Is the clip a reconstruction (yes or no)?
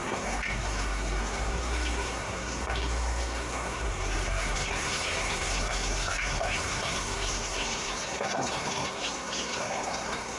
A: yes